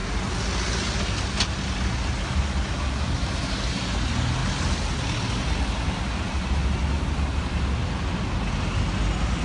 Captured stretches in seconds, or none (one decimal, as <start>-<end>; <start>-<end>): 0.0-9.4

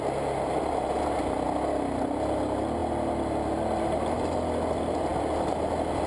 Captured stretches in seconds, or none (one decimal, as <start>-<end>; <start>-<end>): 0.0-6.1

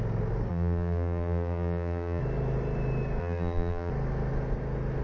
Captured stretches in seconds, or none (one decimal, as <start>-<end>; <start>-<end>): 0.0-0.5; 2.2-3.2; 3.9-5.0

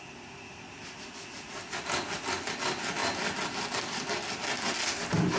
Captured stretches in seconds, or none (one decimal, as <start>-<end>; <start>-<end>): 0.0-5.4

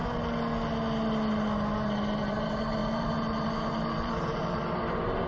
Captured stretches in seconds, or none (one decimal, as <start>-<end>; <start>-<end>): 0.0-2.2

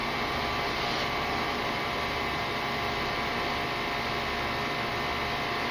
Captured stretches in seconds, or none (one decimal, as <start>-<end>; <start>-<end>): 3.4-5.7

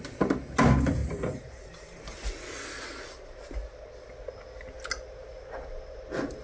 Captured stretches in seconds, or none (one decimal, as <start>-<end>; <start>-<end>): 0.0-1.0; 2.3-6.4